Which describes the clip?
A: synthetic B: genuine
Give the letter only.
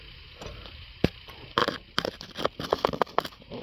B